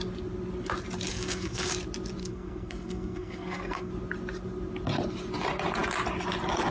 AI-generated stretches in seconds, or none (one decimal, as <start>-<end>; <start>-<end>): 1.1-1.7; 2.2-3.9